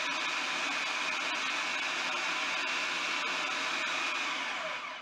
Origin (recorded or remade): recorded